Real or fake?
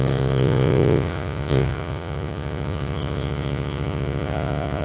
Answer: fake